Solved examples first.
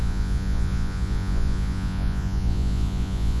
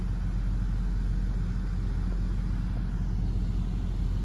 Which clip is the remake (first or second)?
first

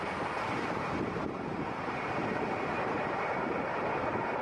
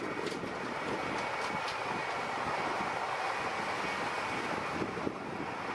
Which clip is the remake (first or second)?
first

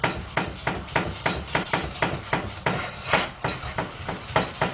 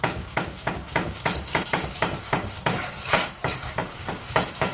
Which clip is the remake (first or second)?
second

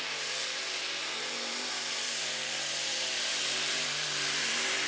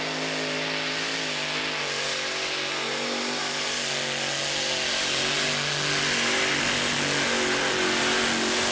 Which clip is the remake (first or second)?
first